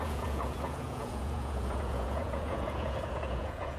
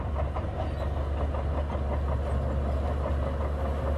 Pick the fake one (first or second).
first